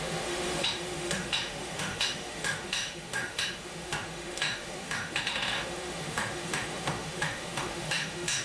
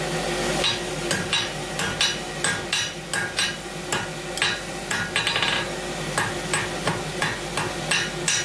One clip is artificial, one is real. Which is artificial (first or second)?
first